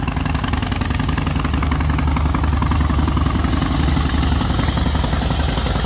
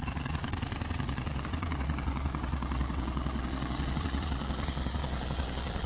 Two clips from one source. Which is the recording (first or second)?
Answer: first